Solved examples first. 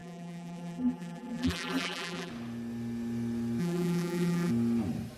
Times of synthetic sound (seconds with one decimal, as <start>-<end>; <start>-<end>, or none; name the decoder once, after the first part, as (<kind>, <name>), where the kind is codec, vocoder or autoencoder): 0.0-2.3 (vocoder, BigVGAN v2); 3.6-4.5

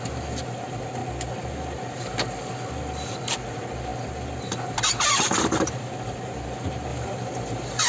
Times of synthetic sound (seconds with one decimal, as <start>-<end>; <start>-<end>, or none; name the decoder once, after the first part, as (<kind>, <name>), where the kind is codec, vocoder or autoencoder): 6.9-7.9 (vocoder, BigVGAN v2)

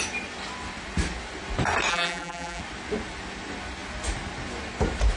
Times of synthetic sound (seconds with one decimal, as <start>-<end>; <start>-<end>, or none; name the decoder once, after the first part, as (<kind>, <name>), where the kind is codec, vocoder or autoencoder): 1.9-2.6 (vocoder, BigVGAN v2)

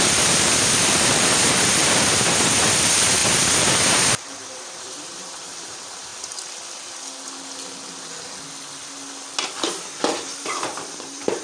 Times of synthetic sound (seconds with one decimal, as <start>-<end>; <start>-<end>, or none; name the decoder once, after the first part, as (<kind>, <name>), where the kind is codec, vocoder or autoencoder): 0.0-3.2 (vocoder, BigVGAN v2); 3.7-6.1; 10.4-11.4

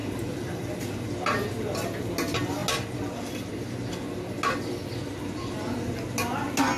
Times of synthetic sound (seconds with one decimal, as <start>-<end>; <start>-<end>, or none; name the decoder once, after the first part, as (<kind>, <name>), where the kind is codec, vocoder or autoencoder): 0.0-0.8 (vocoder, BigVGAN v2)

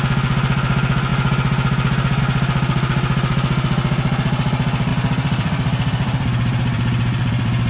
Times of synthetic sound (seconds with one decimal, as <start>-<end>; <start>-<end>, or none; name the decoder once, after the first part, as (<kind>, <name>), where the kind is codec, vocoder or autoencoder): 4.9-7.7 (vocoder, BigVGAN v2)

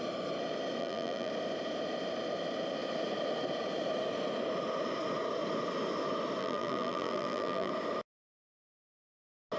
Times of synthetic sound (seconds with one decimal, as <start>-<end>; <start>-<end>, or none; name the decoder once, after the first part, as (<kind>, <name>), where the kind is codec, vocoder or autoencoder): 0.8-1.3 (vocoder, BigVGAN v2); 6.4-7.7

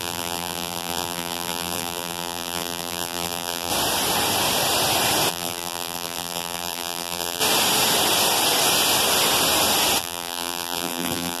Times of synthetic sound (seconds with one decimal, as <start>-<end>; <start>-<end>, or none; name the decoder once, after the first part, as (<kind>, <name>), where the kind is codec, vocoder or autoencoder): 0.0-3.7 (vocoder, BigVGAN v2); 5.3-7.4; 10.0-11.4